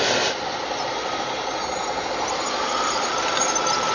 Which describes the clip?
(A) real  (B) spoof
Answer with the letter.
A